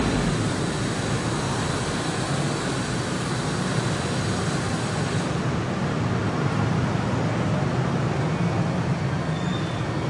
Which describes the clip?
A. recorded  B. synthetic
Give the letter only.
A